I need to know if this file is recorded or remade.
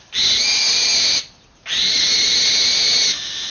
recorded